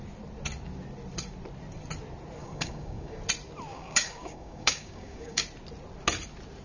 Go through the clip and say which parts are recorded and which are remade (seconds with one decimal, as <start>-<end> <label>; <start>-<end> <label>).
0.0-2.4 recorded; 2.4-3.2 remade; 3.2-3.7 recorded; 3.7-5.4 remade; 5.4-6.6 recorded